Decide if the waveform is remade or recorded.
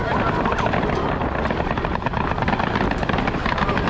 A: recorded